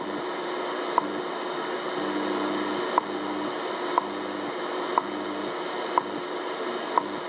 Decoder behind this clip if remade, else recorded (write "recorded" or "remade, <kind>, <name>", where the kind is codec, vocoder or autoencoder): recorded